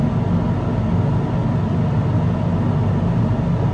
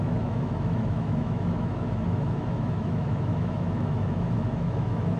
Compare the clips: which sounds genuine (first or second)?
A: first